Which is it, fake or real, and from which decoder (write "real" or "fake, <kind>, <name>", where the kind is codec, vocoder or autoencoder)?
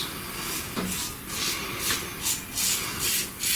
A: real